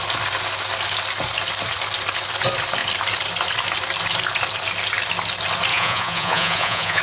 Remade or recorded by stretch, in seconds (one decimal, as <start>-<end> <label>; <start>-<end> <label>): 0.0-5.7 recorded; 5.7-7.0 remade